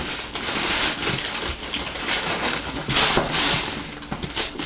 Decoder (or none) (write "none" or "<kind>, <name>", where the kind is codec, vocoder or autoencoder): none